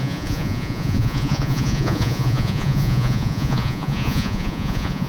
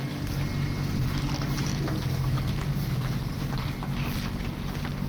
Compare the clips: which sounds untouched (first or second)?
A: second